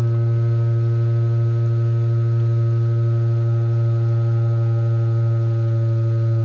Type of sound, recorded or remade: recorded